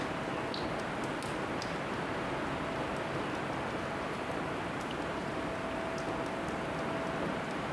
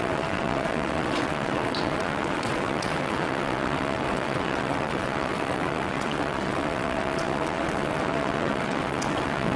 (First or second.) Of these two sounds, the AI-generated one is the second